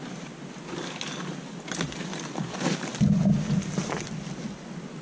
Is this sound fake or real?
real